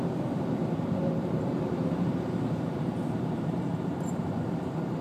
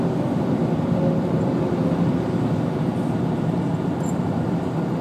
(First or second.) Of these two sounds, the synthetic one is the first